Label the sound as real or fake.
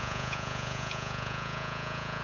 fake